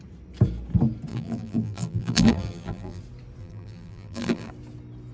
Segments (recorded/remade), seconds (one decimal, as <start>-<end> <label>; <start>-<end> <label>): 0.0-1.1 recorded; 1.1-3.0 remade; 3.0-3.4 recorded; 3.4-4.5 remade; 4.5-5.1 recorded